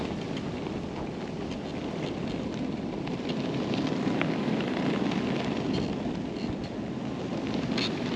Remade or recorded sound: recorded